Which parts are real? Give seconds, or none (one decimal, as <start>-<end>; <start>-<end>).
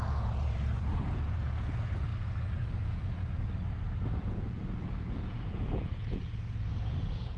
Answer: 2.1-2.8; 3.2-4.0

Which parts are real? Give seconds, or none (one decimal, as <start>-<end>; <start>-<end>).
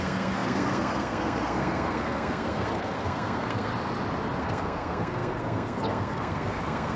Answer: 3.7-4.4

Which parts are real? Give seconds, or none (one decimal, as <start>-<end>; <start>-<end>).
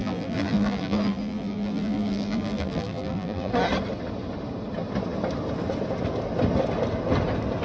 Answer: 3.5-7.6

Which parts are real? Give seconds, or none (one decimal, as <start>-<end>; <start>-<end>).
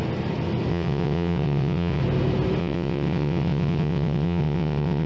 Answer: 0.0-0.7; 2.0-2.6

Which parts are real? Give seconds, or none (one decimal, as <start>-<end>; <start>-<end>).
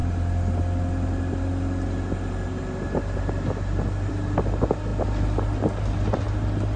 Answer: 0.0-6.8